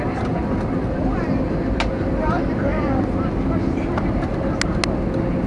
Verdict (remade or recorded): recorded